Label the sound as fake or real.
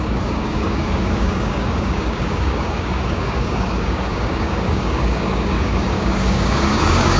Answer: fake